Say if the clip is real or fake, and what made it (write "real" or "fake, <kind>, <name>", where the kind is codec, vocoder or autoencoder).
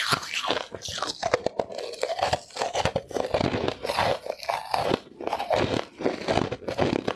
real